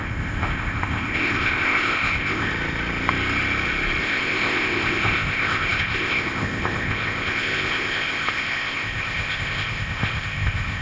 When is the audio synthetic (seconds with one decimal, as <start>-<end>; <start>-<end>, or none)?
0.0-2.5; 4.0-10.8